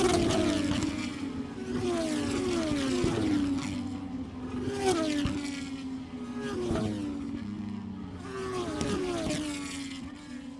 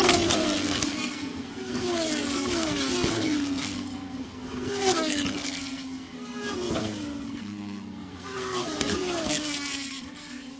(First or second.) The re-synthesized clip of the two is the second